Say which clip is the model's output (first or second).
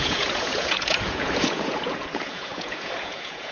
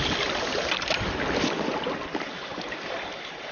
first